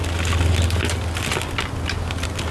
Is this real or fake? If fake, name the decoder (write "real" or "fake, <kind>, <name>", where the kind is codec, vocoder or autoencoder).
real